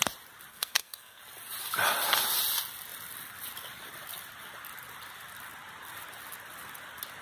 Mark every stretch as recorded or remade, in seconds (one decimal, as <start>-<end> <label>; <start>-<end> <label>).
0.0-0.5 recorded; 0.5-1.2 remade; 1.2-7.2 recorded

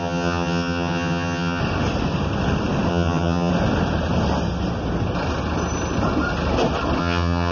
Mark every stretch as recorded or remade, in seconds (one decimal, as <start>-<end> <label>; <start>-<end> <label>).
0.0-1.6 remade; 1.6-2.9 recorded; 2.9-3.5 remade; 3.5-7.0 recorded; 7.0-7.5 remade

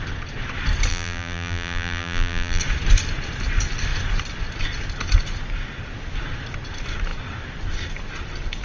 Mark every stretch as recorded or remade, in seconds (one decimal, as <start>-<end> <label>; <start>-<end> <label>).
0.0-0.9 recorded; 0.9-2.6 remade; 2.6-8.6 recorded